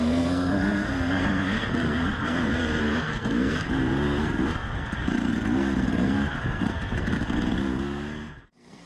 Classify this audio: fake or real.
fake